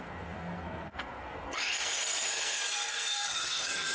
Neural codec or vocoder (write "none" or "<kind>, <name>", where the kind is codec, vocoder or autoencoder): codec, SNAC